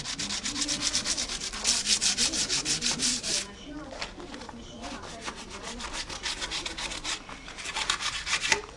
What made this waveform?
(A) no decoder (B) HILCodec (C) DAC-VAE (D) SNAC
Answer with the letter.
A